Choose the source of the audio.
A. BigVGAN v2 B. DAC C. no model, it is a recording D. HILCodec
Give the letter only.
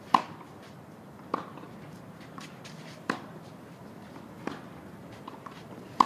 A